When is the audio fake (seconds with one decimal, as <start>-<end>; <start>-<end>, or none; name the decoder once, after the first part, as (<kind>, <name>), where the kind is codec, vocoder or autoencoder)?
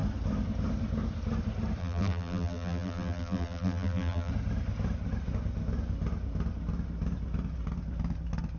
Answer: 1.8-4.3 (vocoder, BigVGAN v2)